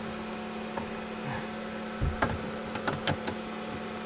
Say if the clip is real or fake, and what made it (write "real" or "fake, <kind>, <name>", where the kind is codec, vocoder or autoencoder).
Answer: real